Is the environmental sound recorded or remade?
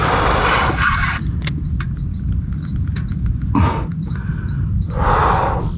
recorded